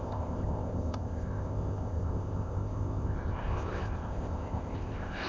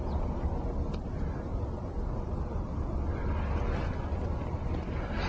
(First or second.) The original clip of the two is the second